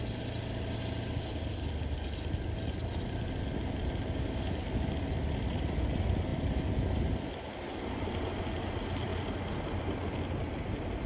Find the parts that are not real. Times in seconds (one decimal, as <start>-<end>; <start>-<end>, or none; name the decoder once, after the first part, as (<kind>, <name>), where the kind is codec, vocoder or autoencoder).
none